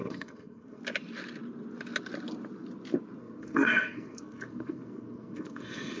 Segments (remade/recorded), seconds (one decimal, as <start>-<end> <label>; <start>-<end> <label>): 0.0-0.8 remade; 0.8-3.2 recorded; 3.2-6.0 remade